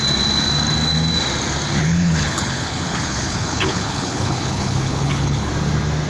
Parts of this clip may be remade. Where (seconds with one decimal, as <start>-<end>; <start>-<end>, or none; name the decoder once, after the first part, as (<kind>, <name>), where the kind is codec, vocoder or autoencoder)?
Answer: 1.8-5.5 (codec, HILCodec)